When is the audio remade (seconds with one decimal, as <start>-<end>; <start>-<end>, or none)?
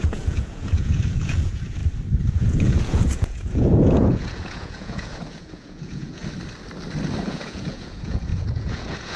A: 0.0-1.8; 2.3-6.2; 7.2-9.2